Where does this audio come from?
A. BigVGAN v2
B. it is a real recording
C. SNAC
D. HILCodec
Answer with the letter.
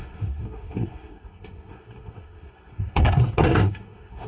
C